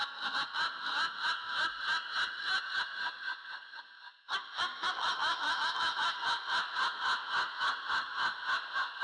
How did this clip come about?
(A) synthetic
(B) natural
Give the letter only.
B